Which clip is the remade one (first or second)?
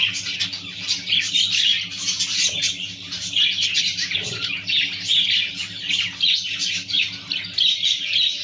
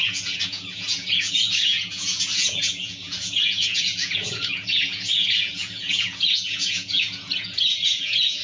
second